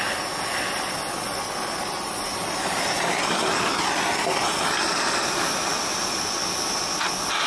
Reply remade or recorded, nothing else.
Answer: recorded